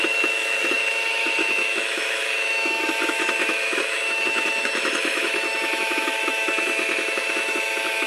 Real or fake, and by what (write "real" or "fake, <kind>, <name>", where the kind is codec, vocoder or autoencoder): fake, autoencoder, DAC-VAE